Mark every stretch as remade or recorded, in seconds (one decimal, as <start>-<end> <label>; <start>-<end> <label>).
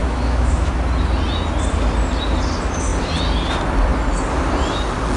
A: 0.0-0.7 remade; 0.7-5.2 recorded